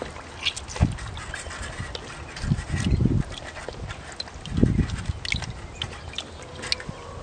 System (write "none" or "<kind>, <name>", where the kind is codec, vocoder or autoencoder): none